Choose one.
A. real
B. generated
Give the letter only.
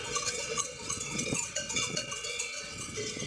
B